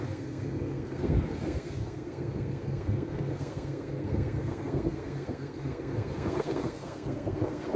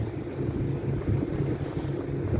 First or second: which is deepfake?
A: first